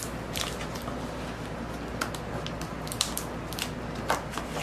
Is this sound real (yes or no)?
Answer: yes